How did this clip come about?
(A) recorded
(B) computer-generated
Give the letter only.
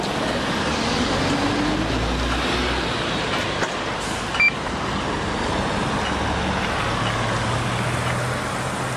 A